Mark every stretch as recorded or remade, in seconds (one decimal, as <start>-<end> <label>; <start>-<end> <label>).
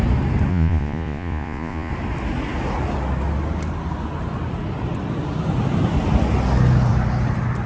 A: 0.0-0.5 recorded; 0.5-1.9 remade; 1.9-7.7 recorded